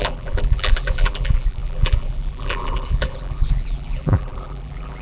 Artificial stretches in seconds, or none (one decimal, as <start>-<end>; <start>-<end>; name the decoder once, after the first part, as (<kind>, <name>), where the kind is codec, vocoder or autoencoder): 0.0-5.0 (vocoder, BigVGAN v2)